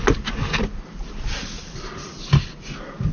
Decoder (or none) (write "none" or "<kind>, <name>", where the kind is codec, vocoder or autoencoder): none